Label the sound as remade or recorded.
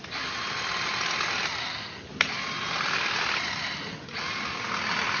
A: recorded